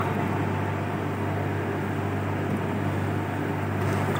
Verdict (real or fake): real